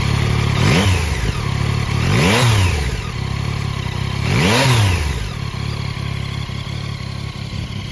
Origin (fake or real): real